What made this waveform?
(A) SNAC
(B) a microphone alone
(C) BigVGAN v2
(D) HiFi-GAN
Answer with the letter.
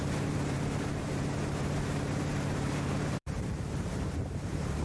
C